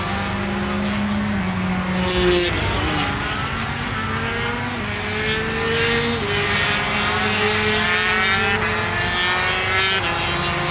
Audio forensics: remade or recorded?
recorded